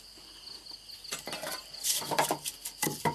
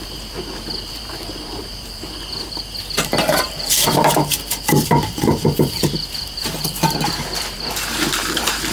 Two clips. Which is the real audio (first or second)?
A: first